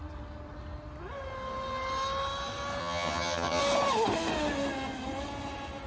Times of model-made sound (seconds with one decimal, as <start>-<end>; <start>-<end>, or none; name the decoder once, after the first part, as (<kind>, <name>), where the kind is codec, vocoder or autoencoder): 2.8-3.6 (vocoder, HiFi-GAN)